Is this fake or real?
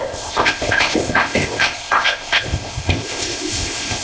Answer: fake